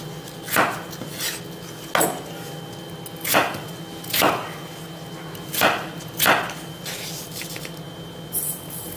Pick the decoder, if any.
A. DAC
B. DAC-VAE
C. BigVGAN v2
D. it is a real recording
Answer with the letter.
D